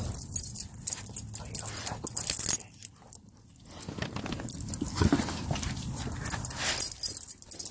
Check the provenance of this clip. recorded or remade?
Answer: recorded